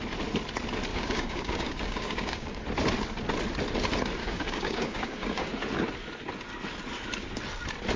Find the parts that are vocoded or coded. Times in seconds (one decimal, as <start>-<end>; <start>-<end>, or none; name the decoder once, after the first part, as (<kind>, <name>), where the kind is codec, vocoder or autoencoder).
0.9-2.6 (codec, DAC); 4.2-5.5